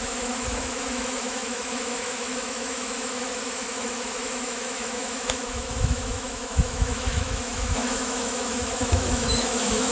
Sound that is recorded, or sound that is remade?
remade